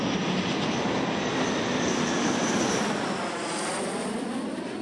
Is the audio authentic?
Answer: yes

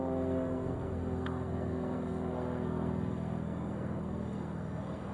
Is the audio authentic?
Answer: no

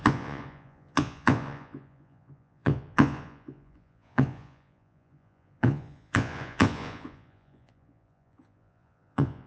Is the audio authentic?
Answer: no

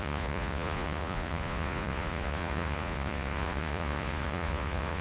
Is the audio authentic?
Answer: no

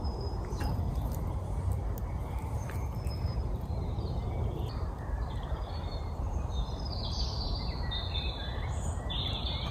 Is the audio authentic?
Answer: no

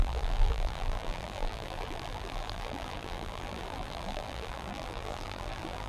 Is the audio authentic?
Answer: no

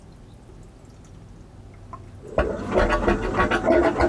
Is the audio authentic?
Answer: yes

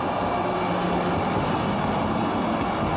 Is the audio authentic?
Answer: yes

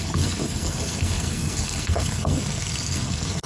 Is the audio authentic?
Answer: no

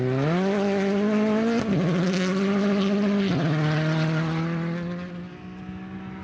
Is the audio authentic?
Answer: yes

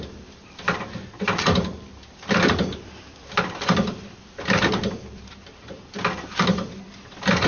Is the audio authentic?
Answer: no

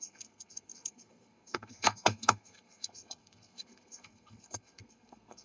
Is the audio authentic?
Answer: no